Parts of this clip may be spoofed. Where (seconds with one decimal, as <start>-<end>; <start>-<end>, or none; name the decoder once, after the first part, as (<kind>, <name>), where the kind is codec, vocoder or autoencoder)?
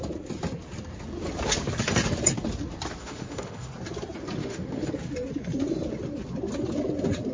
3.0-3.7 (autoencoder, DAC-VAE); 4.4-4.9